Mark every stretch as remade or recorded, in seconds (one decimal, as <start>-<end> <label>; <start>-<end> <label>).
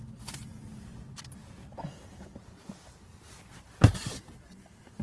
0.0-5.0 recorded